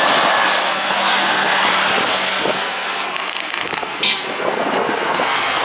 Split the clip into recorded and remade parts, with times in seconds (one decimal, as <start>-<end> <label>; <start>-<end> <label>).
0.0-0.7 recorded; 0.7-1.6 remade; 1.6-2.1 recorded; 2.1-5.6 remade